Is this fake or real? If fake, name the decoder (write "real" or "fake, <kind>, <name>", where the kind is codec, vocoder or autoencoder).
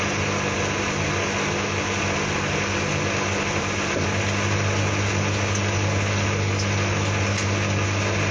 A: real